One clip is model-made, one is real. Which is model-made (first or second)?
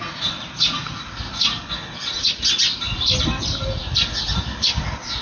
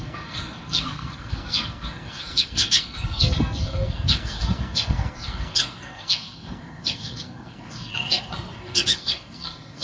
second